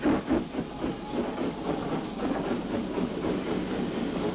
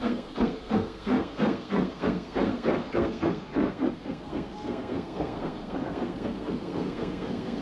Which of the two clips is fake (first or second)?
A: second